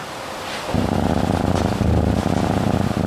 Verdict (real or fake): real